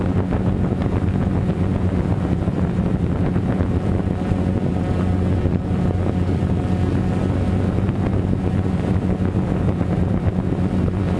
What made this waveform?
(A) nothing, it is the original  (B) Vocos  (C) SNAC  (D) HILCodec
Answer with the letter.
A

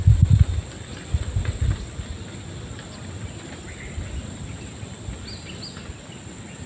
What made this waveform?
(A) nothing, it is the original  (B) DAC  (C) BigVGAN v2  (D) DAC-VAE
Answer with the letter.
A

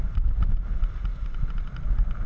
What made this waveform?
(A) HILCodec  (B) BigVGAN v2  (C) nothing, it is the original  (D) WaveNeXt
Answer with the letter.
B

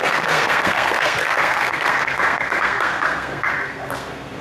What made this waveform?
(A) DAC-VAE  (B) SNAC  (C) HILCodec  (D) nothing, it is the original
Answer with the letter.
B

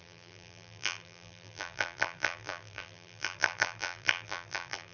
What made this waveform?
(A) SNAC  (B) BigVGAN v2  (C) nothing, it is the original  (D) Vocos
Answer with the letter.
B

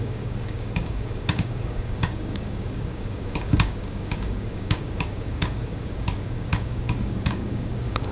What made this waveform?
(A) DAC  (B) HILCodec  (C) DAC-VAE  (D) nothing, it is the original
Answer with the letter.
A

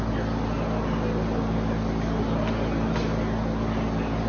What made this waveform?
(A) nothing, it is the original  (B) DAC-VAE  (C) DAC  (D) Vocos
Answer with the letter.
A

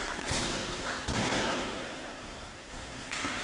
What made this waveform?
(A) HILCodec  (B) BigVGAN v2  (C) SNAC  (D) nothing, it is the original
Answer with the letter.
C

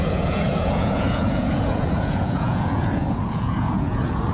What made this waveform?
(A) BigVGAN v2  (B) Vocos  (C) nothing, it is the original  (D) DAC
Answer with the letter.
B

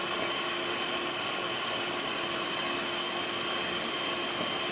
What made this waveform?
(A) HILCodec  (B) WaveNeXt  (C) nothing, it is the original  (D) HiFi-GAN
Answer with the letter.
C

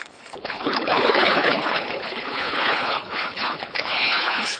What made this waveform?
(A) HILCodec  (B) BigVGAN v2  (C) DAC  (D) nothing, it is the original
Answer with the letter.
A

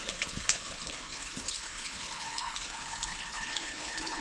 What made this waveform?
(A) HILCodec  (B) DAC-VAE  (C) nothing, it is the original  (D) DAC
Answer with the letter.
A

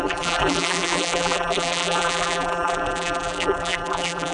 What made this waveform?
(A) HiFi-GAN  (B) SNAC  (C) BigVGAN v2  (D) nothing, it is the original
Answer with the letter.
C